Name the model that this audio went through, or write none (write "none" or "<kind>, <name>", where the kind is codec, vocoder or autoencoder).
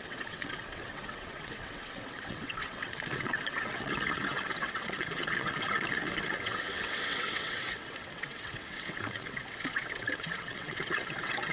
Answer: vocoder, WaveNeXt